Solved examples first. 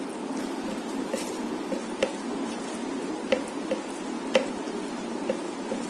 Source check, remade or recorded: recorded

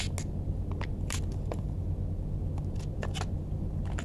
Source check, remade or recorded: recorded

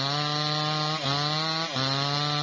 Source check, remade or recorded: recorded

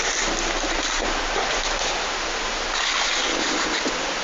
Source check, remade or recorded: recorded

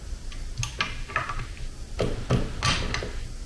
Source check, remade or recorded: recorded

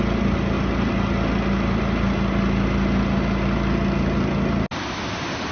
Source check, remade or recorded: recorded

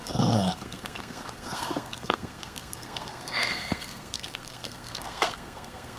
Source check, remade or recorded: remade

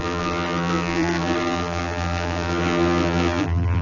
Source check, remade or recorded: remade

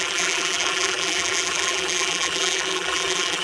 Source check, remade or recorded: remade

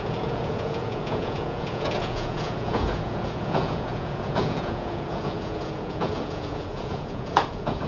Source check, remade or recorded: remade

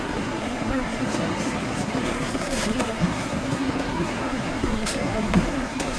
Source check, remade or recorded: remade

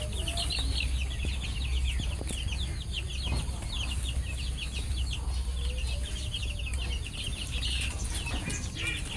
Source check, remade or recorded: recorded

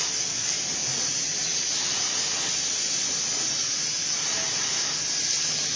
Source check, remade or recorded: recorded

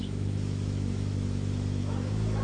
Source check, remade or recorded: remade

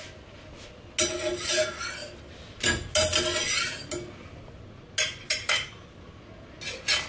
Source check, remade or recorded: recorded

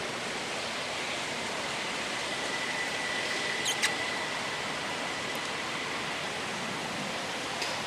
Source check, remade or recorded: recorded